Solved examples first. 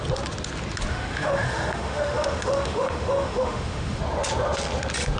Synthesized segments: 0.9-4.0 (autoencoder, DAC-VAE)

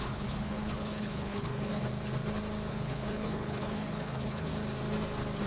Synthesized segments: 0.0-1.8 (codec, HILCodec); 2.7-4.5

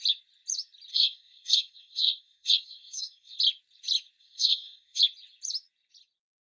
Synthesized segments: 0.9-3.4 (codec, SNAC); 4.2-5.0

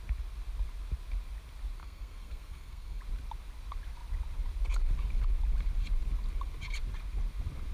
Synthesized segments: 1.8-3.0 (codec, SNAC)

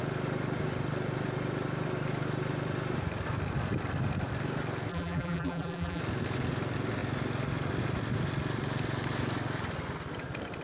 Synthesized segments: 4.9-6.0 (vocoder, BigVGAN v2)

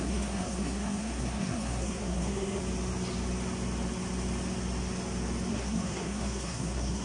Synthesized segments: 0.0-2.6 (codec, SNAC); 5.5-7.0